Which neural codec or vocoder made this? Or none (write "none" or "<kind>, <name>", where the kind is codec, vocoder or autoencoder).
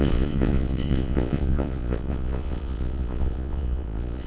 vocoder, Vocos